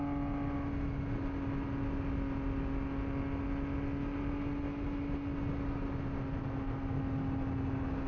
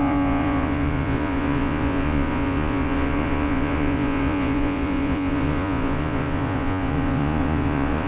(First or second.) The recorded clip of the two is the first